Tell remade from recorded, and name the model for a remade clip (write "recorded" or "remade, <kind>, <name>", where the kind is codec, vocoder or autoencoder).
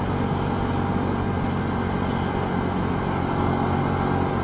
recorded